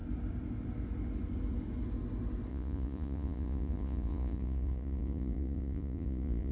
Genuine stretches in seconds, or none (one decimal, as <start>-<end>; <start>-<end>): 0.0-2.5